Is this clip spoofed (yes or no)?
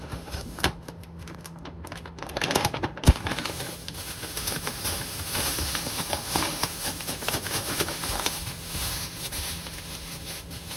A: yes